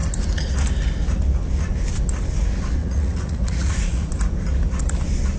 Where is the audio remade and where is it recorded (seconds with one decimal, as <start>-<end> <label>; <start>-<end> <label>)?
0.0-2.8 recorded; 2.8-4.1 remade; 4.1-5.4 recorded